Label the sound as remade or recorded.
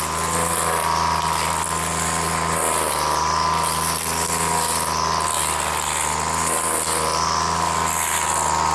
recorded